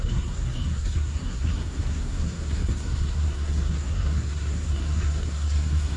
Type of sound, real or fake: fake